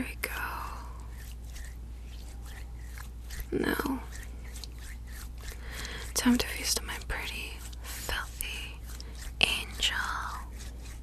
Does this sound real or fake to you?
real